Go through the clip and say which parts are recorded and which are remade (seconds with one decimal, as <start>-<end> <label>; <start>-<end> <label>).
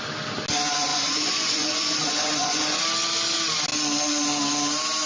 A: 0.0-0.9 recorded; 0.9-2.8 remade; 2.8-5.1 recorded